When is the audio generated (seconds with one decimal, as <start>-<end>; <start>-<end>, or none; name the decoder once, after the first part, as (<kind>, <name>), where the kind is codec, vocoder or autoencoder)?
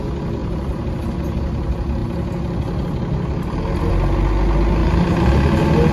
0.4-1.0 (vocoder, BigVGAN v2); 4.8-5.3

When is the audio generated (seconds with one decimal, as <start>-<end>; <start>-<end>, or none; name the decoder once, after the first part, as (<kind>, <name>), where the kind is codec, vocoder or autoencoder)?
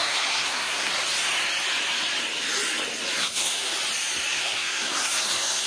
0.0-0.9 (codec, SNAC); 3.2-3.7; 4.3-5.7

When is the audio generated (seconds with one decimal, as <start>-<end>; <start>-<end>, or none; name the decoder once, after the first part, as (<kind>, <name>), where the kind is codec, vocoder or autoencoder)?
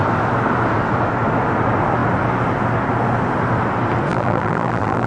4.1-5.1 (vocoder, BigVGAN v2)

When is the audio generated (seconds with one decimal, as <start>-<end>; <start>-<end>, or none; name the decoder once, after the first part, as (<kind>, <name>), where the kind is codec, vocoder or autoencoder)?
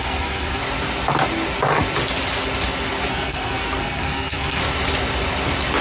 0.0-0.6 (codec, SNAC); 3.1-4.6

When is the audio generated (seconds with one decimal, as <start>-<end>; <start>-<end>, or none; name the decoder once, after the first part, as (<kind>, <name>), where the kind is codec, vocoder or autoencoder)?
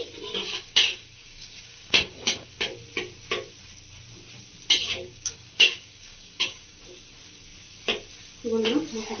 0.4-2.6 (codec, DAC); 4.8-6.8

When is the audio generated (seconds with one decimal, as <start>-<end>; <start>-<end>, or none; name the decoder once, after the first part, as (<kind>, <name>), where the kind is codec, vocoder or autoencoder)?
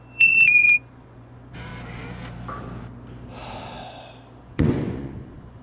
0.0-1.7 (vocoder, Vocos); 4.4-5.6